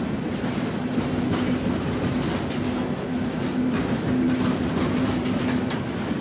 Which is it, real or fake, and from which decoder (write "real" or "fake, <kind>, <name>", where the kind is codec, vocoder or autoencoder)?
real